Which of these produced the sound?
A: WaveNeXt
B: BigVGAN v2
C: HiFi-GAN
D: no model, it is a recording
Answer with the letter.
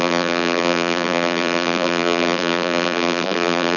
B